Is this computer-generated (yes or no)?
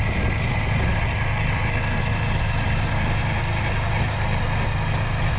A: no